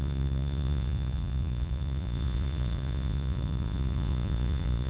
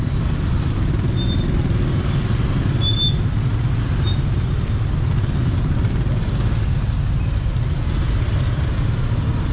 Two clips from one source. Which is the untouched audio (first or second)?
second